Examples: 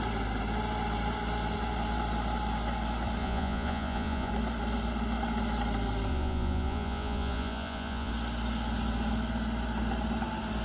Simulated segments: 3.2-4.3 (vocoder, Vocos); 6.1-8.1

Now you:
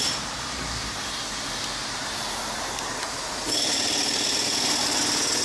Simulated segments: 1.8-5.0 (vocoder, BigVGAN v2)

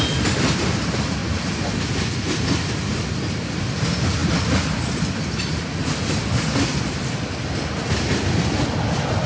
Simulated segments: none

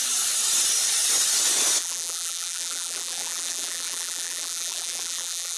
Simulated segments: 1.8-5.6 (vocoder, BigVGAN v2)

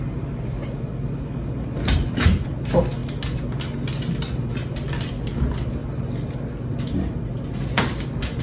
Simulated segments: none

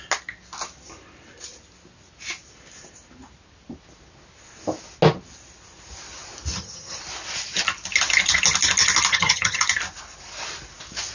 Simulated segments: 6.5-7.0 (vocoder, HiFi-GAN); 9.1-9.6

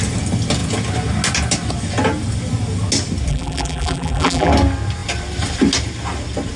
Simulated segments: 3.3-4.5 (vocoder, BigVGAN v2)